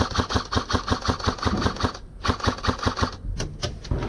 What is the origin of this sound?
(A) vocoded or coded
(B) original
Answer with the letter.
B